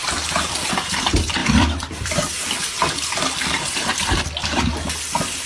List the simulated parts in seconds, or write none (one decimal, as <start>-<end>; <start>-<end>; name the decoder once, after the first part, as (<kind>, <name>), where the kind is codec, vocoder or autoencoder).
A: 1.4-4.7 (vocoder, BigVGAN v2)

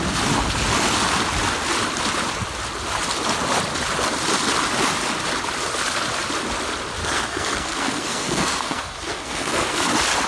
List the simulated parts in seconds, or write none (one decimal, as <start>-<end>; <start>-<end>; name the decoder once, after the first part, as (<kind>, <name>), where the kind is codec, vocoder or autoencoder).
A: 7.0-9.9 (codec, SNAC)

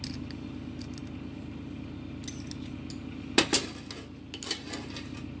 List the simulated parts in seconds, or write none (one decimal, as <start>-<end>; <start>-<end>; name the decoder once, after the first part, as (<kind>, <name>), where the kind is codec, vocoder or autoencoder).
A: none